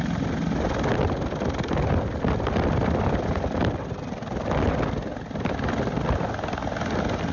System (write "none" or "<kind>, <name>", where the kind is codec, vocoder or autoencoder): none